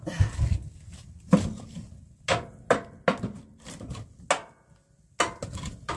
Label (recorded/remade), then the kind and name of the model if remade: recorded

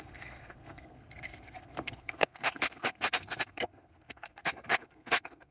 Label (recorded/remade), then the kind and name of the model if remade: remade, codec, SNAC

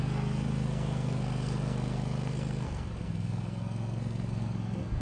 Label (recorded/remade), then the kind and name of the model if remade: remade, codec, SNAC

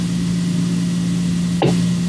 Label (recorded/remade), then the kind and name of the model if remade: recorded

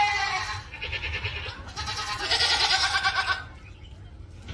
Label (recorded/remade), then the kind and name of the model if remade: recorded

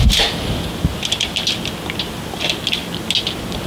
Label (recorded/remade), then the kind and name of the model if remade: recorded